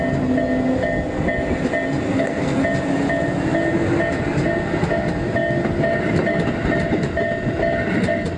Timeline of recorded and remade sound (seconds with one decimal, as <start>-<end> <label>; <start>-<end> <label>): 0.0-2.1 recorded; 2.1-2.6 remade; 2.6-8.4 recorded